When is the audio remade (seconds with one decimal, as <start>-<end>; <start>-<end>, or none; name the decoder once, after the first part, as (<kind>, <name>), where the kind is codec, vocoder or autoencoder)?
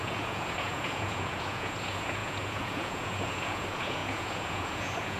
0.0-5.2 (vocoder, Vocos)